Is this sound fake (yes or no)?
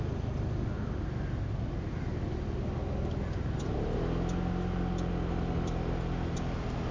no